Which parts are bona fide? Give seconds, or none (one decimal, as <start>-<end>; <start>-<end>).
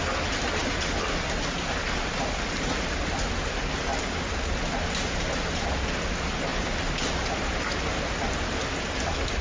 0.0-9.4